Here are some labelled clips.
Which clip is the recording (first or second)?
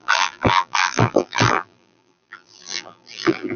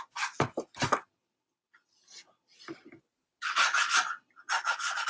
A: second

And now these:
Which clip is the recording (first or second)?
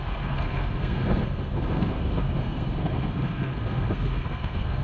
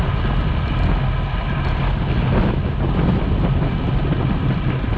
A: second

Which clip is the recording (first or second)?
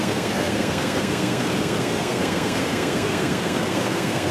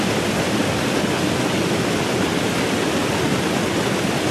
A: second